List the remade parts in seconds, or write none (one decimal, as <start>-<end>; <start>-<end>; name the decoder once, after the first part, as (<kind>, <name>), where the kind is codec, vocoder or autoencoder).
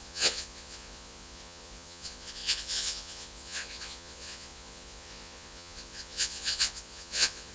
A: 0.0-7.5 (vocoder, Vocos)